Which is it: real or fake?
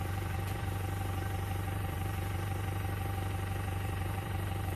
fake